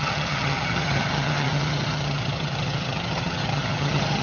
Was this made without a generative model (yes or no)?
no